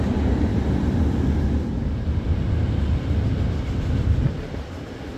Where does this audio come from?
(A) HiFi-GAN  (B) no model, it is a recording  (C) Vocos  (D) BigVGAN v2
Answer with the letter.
B